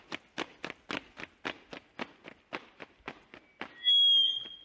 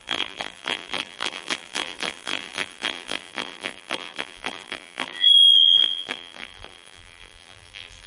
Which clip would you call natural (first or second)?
first